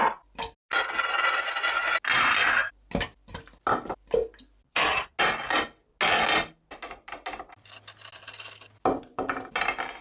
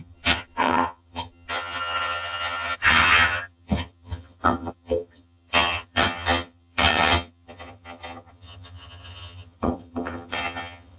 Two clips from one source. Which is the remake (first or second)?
second